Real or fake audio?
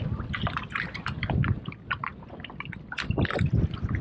fake